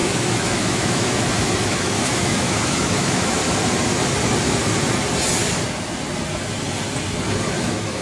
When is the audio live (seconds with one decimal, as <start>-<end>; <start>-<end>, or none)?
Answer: 3.4-7.6